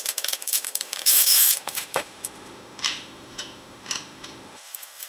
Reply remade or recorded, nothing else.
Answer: remade